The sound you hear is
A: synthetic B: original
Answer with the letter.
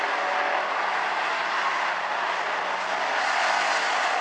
B